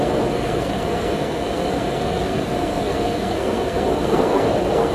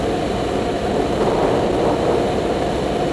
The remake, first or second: first